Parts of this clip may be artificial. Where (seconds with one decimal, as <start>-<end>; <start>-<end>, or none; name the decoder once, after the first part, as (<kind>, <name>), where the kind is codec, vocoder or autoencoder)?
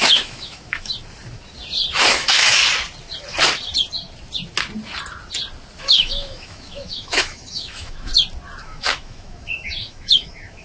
0.0-0.9 (autoencoder, DAC-VAE); 2.1-2.6; 5.8-8.1; 8.6-10.6